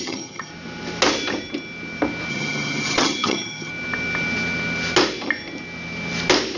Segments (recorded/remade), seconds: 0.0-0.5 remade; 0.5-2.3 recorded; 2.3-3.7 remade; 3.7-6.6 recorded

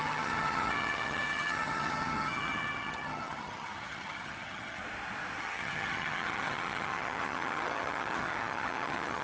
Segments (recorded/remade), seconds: 0.0-4.8 remade; 4.8-5.4 recorded; 5.4-9.2 remade

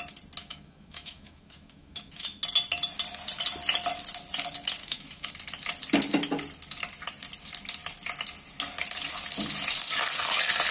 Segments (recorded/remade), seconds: 0.0-0.4 recorded; 0.4-2.4 remade; 2.4-4.8 recorded; 4.8-5.3 remade; 5.3-10.7 recorded

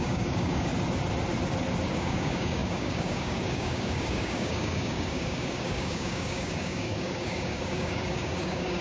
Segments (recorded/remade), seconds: 0.0-0.7 remade; 0.7-1.9 recorded; 1.9-8.8 remade

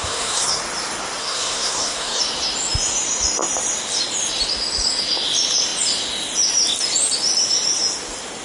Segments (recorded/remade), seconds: 0.0-0.6 remade; 0.6-1.2 recorded; 1.2-2.2 remade; 2.2-8.4 recorded

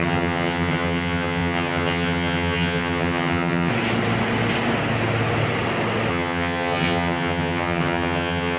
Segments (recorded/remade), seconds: 0.0-3.7 remade; 3.7-6.1 recorded; 6.1-8.6 remade

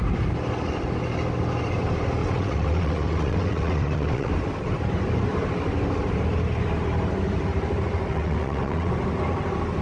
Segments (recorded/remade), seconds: 0.0-2.2 recorded; 2.2-4.3 remade; 4.3-8.1 recorded; 8.1-8.9 remade; 8.9-9.8 recorded

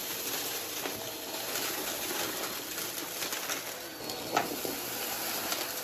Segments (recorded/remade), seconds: 0.0-2.2 remade; 2.2-5.8 recorded